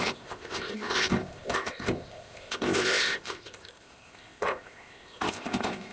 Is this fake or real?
fake